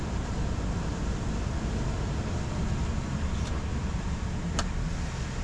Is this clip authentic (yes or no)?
yes